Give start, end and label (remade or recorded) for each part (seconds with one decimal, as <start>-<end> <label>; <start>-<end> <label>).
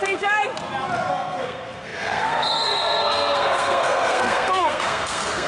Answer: 0.0-0.5 remade; 0.5-1.1 recorded; 1.1-5.5 remade